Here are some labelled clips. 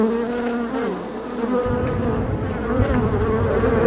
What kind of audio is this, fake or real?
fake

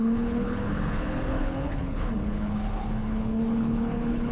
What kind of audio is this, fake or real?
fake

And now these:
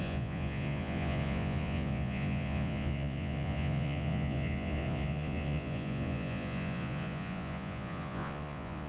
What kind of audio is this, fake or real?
fake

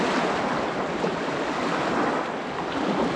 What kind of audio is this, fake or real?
real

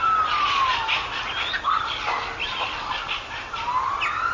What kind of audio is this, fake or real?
real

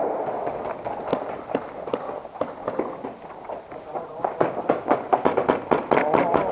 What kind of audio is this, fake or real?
real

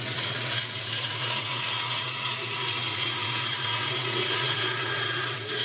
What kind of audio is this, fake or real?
fake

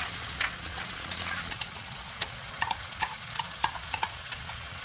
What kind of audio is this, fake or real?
fake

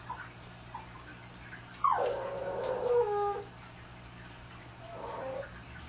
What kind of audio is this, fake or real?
real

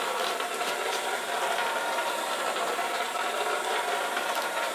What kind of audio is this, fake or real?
fake